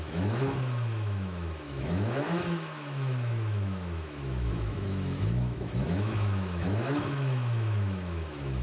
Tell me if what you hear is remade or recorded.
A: remade